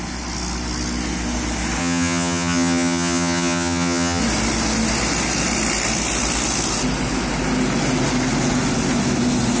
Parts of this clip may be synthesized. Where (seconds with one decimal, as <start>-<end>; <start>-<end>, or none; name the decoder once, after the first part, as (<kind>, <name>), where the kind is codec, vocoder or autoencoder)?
1.8-4.2 (vocoder, HiFi-GAN)